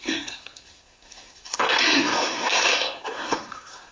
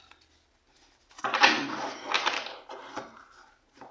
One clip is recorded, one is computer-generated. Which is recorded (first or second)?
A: second